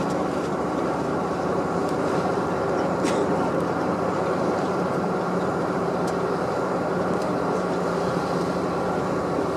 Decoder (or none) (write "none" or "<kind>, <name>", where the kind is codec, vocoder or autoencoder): vocoder, BigVGAN v2